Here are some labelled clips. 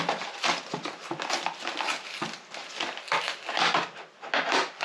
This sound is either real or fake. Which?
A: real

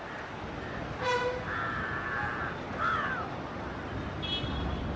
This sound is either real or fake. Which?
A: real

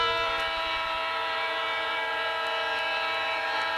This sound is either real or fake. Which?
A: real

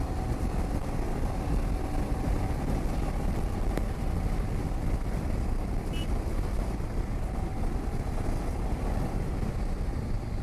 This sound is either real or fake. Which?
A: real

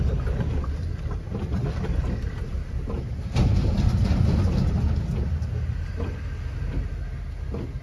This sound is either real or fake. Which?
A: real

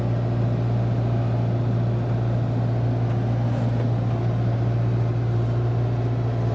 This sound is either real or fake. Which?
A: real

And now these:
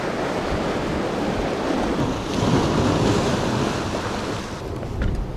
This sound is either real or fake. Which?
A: real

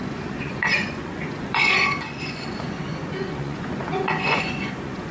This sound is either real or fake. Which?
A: fake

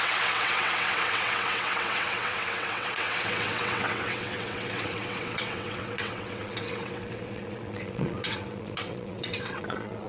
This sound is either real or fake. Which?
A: fake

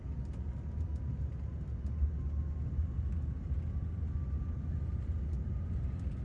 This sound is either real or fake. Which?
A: real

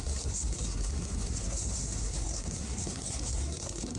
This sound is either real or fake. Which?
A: fake